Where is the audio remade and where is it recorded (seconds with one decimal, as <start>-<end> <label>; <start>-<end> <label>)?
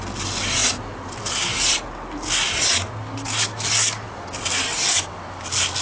0.0-5.8 recorded